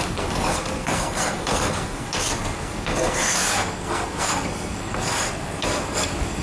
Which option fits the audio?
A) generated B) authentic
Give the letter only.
A